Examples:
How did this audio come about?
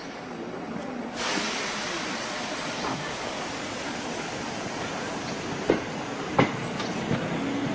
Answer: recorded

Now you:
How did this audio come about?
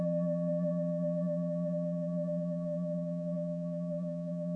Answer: remade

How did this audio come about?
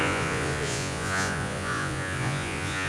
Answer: remade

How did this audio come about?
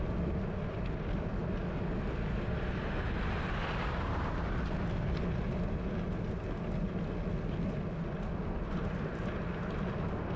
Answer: recorded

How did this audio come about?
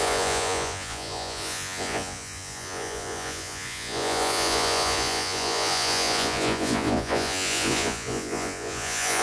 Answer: remade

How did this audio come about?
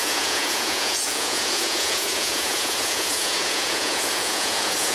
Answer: remade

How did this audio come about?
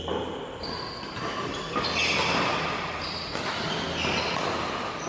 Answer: recorded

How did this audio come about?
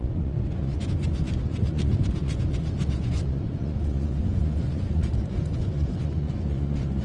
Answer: remade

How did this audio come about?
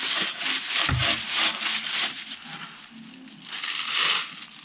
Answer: recorded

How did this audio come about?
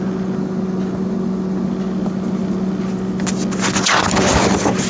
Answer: recorded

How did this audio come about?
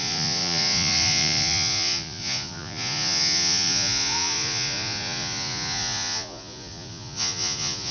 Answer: remade